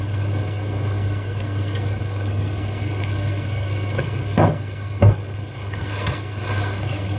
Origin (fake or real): fake